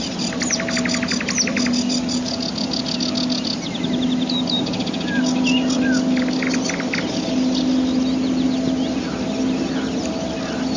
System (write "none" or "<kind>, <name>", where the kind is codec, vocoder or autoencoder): none